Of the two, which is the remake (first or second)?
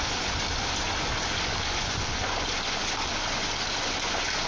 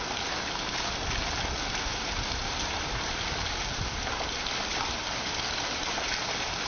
first